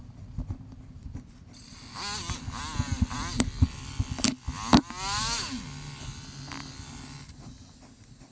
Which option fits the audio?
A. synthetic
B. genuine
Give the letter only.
B